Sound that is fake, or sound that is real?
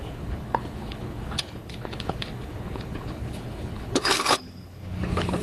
fake